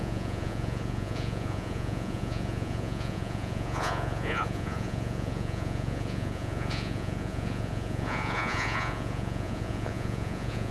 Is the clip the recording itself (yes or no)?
no